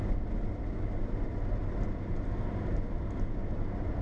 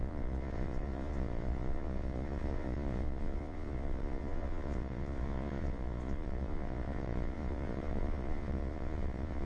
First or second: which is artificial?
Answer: second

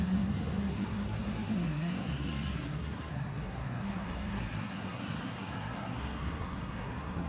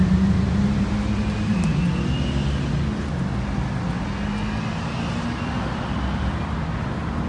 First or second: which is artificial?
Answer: first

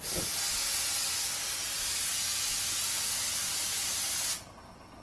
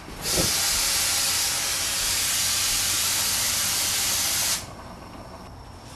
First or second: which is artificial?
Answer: second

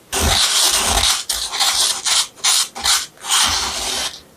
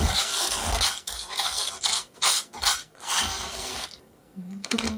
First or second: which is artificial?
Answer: second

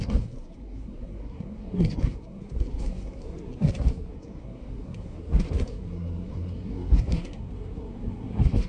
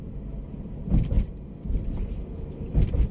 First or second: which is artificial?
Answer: first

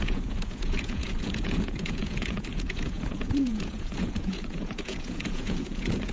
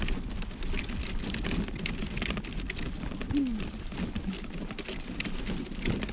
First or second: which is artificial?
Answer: first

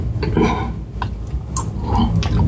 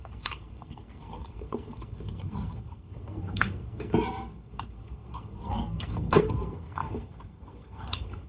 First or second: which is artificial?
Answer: second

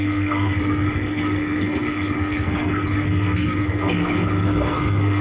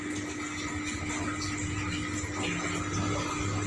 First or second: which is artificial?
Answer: first